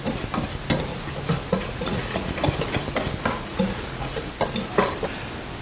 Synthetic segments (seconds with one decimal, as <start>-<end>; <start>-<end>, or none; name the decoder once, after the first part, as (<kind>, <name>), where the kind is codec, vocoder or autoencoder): 1.5-2.3 (vocoder, Vocos); 3.3-4.2